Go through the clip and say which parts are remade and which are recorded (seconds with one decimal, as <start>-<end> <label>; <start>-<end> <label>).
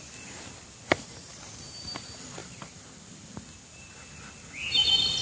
0.0-1.3 recorded; 1.3-1.8 remade; 1.8-2.4 recorded; 2.4-3.6 remade; 3.6-5.2 recorded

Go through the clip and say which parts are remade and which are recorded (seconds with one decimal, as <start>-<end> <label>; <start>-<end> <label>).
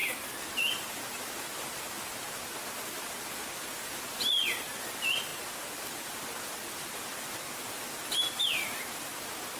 0.0-9.6 recorded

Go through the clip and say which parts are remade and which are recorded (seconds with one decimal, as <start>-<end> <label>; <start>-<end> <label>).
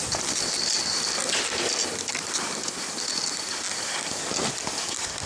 0.0-1.2 recorded; 1.2-4.4 remade; 4.4-5.3 recorded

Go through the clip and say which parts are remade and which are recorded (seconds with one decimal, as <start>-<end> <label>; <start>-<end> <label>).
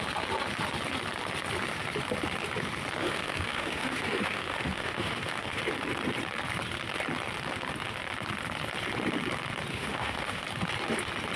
0.0-3.0 recorded; 3.0-5.6 remade; 5.6-9.7 recorded; 9.7-10.4 remade; 10.4-11.4 recorded